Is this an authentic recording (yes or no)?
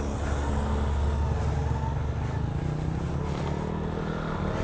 yes